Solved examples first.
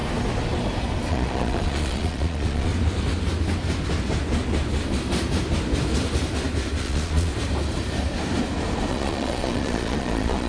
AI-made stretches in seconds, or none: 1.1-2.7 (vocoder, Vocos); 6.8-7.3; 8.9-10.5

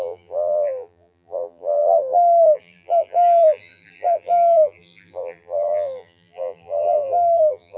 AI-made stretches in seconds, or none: 0.0-7.8 (vocoder, BigVGAN v2)

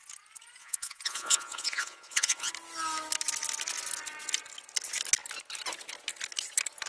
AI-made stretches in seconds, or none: 0.6-2.5 (vocoder, Vocos)

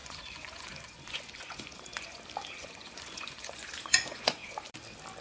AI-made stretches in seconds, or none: 0.0-2.2 (vocoder, Vocos); 2.6-4.7

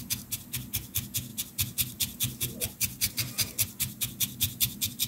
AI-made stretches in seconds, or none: none